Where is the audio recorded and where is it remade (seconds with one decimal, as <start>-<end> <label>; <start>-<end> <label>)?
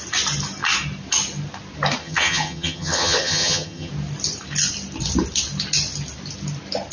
0.0-2.0 recorded; 2.0-3.9 remade; 3.9-6.9 recorded